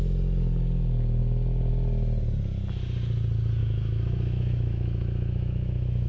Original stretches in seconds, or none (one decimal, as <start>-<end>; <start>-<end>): 0.0-3.6

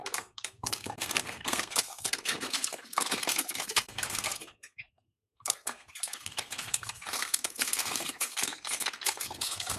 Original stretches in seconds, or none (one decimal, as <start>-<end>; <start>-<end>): none

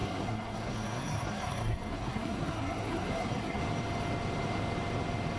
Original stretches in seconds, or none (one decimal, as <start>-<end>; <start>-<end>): 3.6-5.4

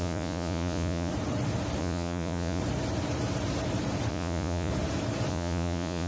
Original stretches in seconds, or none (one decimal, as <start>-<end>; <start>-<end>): 1.1-1.8; 2.6-4.1; 4.7-5.3

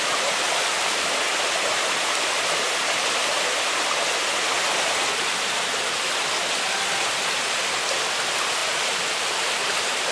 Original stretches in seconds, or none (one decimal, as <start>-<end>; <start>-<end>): 0.0-10.1

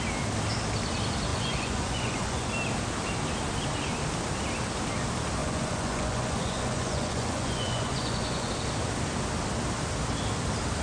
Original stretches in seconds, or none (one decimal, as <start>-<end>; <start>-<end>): 0.0-1.3; 2.5-5.4; 8.5-10.8

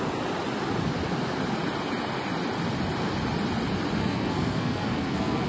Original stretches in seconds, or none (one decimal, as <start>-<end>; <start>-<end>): 0.0-4.0